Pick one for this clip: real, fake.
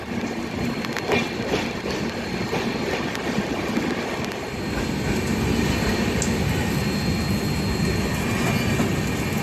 real